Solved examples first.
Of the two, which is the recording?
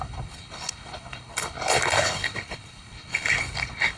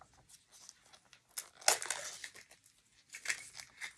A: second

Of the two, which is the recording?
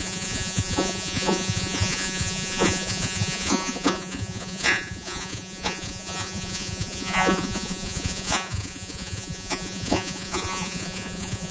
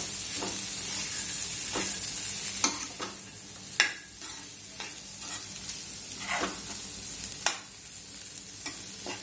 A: second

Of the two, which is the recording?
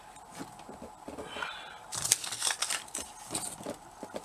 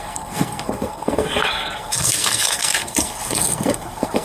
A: first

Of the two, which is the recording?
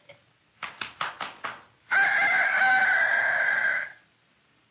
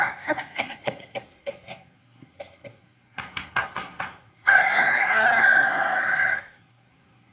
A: first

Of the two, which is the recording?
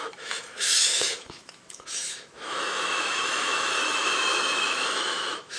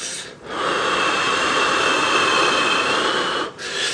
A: second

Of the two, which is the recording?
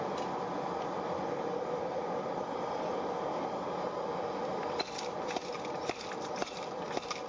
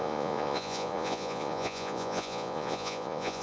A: first